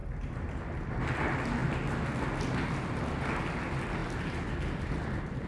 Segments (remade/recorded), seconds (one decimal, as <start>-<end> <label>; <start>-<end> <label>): 0.0-5.5 recorded